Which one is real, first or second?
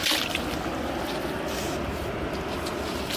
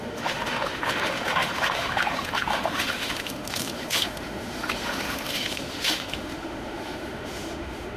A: first